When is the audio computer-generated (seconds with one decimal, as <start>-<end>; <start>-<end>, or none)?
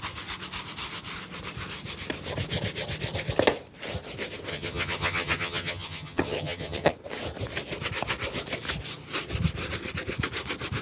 4.5-6.9